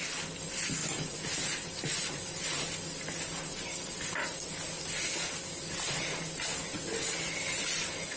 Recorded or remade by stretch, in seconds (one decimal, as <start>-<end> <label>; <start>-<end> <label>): 0.0-8.2 recorded

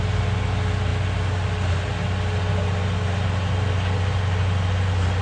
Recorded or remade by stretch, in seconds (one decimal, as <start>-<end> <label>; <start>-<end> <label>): 0.0-5.2 recorded

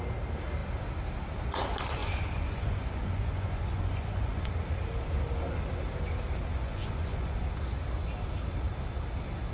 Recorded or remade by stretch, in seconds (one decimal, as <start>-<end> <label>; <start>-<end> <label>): 0.0-2.0 recorded; 2.0-4.5 remade; 4.5-6.5 recorded; 6.5-7.5 remade; 7.5-9.5 recorded

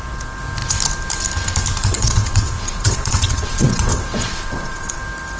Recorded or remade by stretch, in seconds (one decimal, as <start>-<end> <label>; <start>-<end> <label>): 0.0-1.8 recorded; 1.8-5.0 remade; 5.0-5.4 recorded

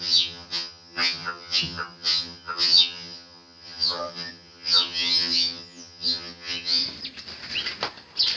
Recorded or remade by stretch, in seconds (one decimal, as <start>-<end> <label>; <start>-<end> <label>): 0.0-6.8 remade; 6.8-8.4 recorded

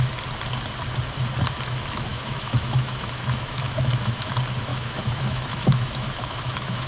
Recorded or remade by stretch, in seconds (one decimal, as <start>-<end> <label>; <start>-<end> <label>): 0.0-2.1 recorded; 2.1-4.3 remade; 4.3-4.7 recorded; 4.7-6.9 remade